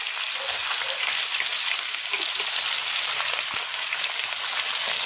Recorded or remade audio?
recorded